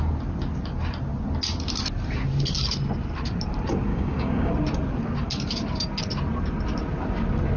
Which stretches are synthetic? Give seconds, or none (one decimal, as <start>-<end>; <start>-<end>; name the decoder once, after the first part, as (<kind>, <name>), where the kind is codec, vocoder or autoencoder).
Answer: 3.9-4.5 (codec, DAC)